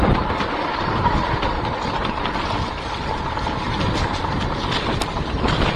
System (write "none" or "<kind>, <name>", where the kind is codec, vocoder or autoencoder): none